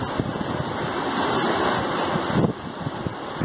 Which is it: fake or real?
real